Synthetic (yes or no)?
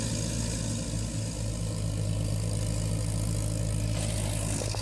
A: no